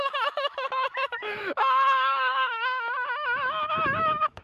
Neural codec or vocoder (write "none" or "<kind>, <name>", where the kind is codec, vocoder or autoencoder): autoencoder, DAC-VAE